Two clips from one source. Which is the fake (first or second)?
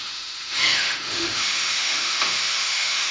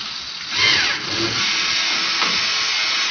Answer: first